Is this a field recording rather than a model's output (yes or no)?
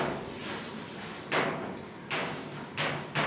yes